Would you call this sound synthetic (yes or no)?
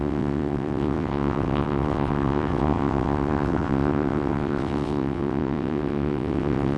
yes